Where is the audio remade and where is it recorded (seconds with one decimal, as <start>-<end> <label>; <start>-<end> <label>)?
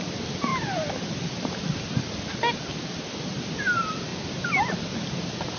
0.0-5.6 recorded